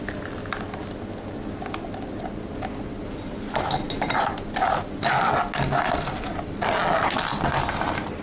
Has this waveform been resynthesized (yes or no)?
no